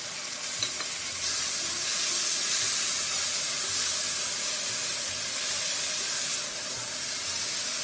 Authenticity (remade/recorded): recorded